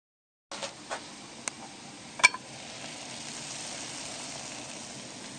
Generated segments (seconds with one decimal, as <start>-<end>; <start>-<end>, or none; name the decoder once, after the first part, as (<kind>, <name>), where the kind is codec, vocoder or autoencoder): none